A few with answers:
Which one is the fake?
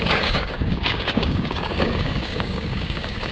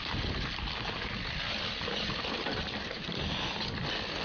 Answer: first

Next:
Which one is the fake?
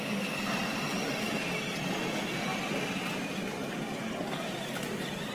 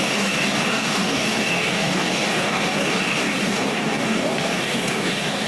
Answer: second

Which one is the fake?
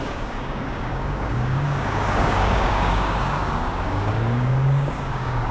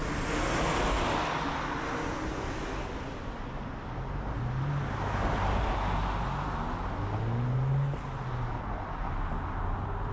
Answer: first